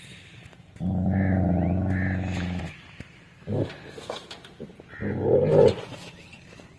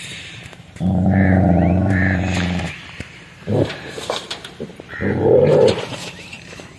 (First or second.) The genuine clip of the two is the first